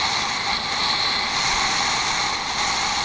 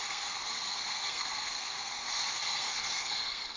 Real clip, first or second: first